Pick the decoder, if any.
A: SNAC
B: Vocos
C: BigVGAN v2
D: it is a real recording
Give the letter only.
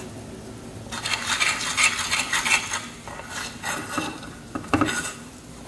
D